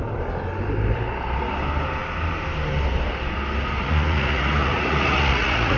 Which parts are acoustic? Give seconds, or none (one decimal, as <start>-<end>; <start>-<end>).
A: 0.0-3.8